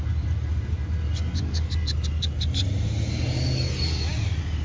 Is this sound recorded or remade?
recorded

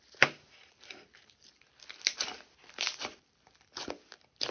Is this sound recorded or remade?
recorded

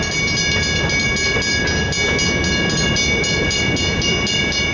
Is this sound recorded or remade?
recorded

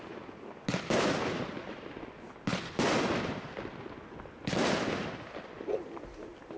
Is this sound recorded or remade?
recorded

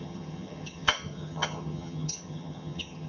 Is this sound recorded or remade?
remade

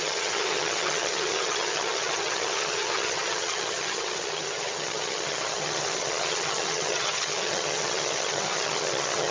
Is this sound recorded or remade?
remade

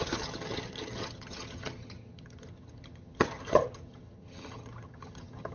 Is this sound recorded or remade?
remade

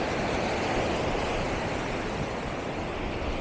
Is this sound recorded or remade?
recorded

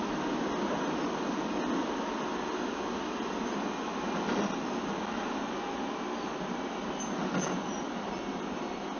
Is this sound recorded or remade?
recorded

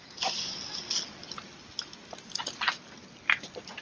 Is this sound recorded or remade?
recorded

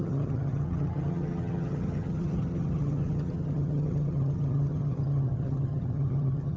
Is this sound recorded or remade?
remade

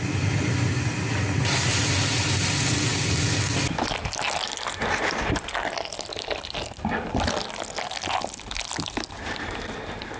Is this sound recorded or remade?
recorded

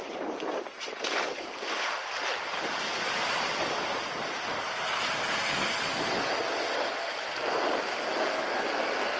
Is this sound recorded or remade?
recorded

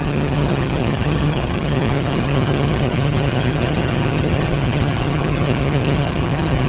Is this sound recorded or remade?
remade